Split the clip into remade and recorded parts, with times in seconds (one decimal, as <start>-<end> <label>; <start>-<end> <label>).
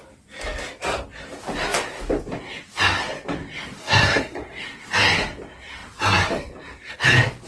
0.0-3.8 recorded; 3.8-4.6 remade; 4.6-7.5 recorded